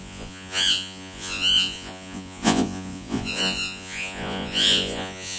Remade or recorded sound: remade